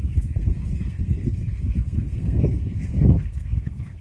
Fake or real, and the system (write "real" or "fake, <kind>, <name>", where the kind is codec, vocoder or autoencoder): fake, codec, SNAC